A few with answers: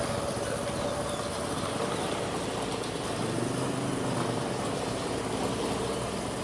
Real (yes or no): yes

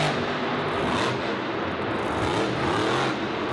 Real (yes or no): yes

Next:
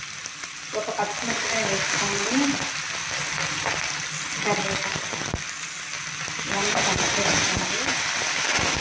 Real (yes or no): yes